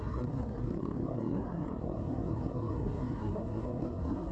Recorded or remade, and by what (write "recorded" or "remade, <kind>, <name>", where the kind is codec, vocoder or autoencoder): remade, codec, SNAC